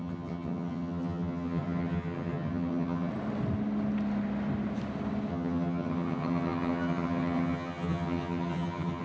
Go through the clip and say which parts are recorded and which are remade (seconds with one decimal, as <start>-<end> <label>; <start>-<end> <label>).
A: 0.0-3.1 remade; 3.1-5.3 recorded; 5.3-9.0 remade